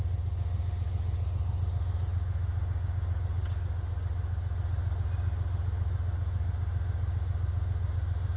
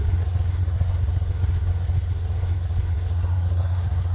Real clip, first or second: first